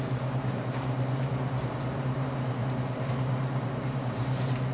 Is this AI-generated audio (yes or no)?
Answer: yes